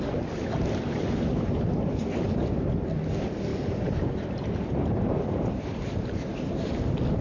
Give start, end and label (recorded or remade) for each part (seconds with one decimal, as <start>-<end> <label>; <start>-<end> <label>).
0.0-3.5 recorded; 3.5-6.7 remade; 6.7-7.2 recorded